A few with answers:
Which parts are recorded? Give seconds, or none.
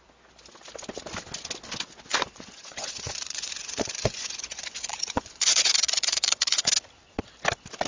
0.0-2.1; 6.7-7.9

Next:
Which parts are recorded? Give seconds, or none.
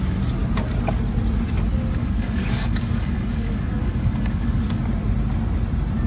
0.0-2.0; 4.8-6.1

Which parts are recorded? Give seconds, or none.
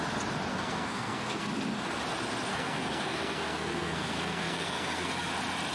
0.0-0.5; 1.5-2.5; 5.3-5.7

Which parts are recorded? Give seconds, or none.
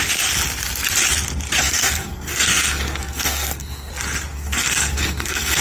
0.0-1.6; 3.9-4.3